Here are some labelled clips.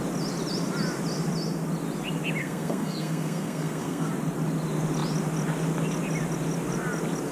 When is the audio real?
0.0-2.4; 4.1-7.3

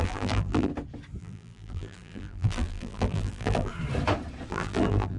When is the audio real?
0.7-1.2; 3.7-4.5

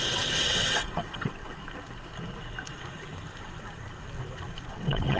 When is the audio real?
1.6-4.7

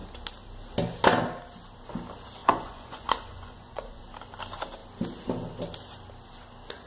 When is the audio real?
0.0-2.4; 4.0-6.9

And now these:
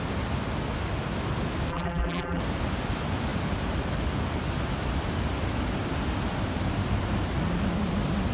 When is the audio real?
0.0-1.7; 2.4-8.3